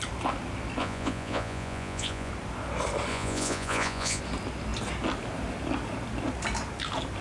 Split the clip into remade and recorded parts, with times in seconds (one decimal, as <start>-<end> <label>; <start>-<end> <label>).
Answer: 0.0-0.8 recorded; 0.8-2.3 remade; 2.3-3.1 recorded; 3.1-4.2 remade; 4.2-7.2 recorded